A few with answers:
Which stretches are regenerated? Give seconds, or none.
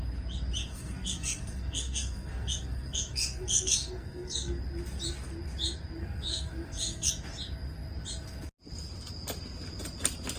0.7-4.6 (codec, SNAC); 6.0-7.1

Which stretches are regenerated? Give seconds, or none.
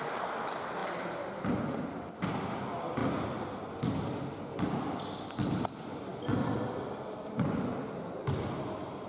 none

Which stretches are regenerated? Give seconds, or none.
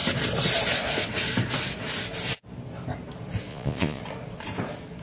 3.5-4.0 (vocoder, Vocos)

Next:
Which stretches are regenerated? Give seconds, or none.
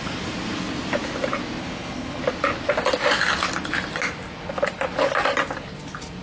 1.6-2.2 (codec, HILCodec)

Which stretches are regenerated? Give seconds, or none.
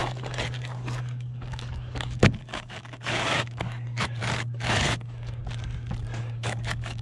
0.0-5.4 (codec, DAC); 6.2-7.0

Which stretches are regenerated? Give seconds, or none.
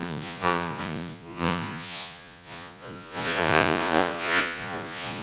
0.0-5.2 (vocoder, Vocos)